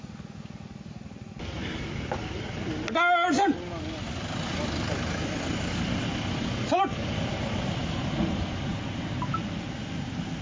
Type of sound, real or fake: real